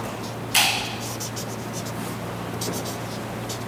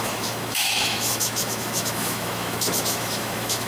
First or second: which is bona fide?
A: first